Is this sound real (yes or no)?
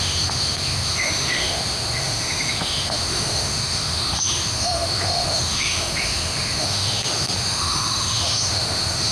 no